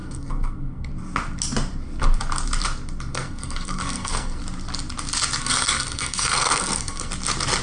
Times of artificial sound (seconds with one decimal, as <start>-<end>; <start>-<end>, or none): 0.0-0.9; 3.1-4.4; 5.4-7.1